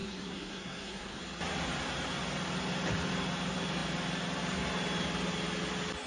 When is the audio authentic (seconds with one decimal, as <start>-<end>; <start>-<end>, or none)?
1.2-6.1